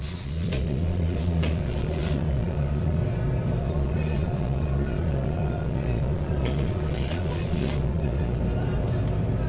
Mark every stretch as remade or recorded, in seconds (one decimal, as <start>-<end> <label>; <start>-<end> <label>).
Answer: 0.0-3.0 remade; 3.0-3.6 recorded; 3.6-8.4 remade; 8.4-9.5 recorded